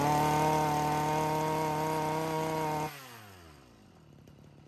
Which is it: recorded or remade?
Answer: recorded